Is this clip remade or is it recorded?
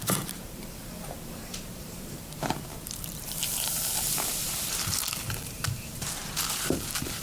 remade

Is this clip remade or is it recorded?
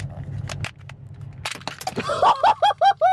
recorded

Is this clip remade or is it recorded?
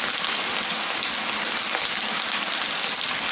recorded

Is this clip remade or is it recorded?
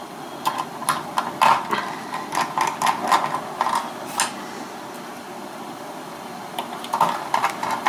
recorded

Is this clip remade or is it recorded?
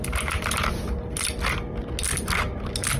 recorded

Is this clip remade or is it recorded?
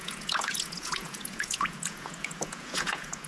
remade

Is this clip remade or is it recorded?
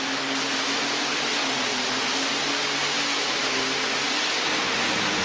recorded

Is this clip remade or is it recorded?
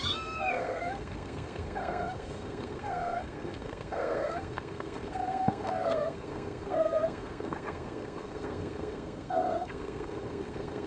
remade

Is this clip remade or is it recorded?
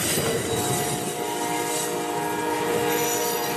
recorded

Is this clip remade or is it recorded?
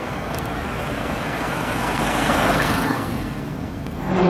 remade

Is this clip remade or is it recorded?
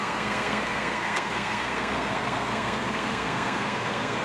remade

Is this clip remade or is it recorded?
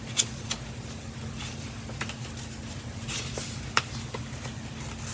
recorded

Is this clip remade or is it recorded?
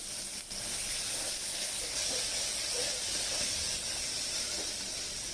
recorded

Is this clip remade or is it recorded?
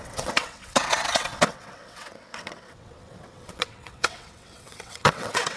remade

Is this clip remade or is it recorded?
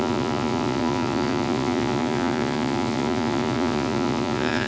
remade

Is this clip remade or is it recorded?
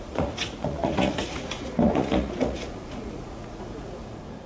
remade